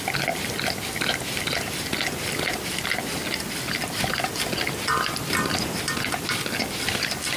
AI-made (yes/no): no